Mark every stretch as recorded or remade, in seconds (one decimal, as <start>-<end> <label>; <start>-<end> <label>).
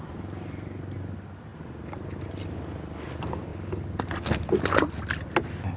0.0-5.8 recorded